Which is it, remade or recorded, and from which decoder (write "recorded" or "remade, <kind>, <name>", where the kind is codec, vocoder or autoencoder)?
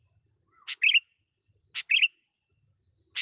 recorded